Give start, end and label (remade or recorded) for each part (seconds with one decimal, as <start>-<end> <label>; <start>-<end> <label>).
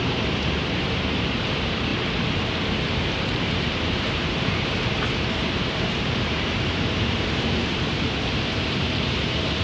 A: 0.0-1.9 remade; 1.9-2.8 recorded; 2.8-9.6 remade